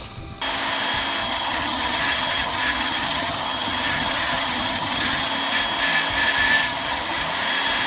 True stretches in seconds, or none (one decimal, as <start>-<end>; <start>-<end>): 0.0-1.2; 5.3-6.6; 7.2-7.9